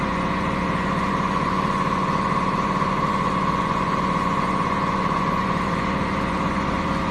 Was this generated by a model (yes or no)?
yes